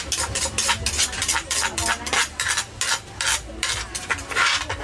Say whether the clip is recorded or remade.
recorded